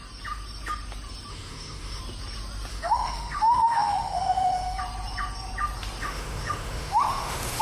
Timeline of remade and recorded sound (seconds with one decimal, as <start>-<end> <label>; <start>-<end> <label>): 0.0-1.3 recorded; 1.3-2.0 remade; 2.0-2.7 recorded; 2.7-4.8 remade; 4.8-6.0 recorded; 6.0-7.6 remade